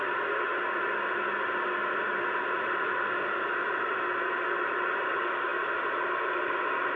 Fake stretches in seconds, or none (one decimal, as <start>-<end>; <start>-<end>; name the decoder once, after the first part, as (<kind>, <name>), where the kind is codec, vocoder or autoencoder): none